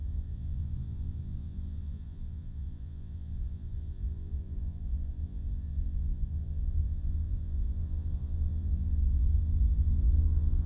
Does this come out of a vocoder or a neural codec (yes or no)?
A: yes